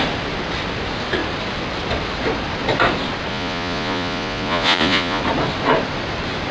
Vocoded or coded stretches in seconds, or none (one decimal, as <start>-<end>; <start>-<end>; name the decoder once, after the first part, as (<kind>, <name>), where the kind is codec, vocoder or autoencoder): 3.3-5.2 (vocoder, Vocos)